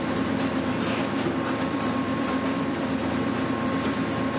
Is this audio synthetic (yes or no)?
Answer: yes